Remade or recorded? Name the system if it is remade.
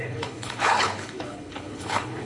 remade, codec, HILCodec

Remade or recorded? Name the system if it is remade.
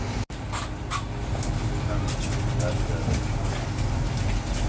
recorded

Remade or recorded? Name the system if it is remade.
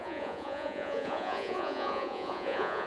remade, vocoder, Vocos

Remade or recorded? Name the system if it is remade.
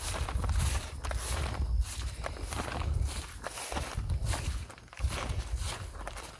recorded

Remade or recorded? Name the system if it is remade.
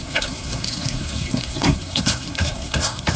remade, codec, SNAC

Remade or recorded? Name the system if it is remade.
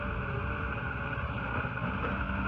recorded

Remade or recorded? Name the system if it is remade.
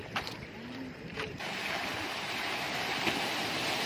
remade, vocoder, BigVGAN v2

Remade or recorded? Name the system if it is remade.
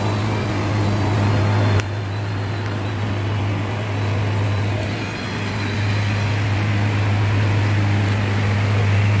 recorded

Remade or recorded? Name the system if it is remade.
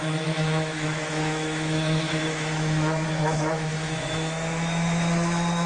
remade, autoencoder, DAC-VAE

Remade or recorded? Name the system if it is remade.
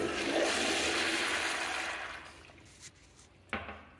recorded